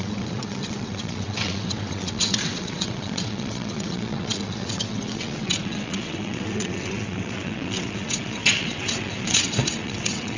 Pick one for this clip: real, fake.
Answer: fake